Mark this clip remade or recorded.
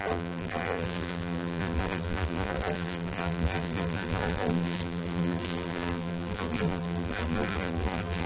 remade